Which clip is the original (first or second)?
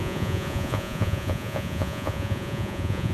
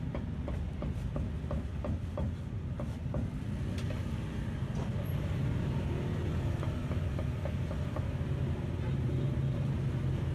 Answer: second